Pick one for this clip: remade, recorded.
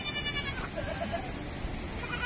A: recorded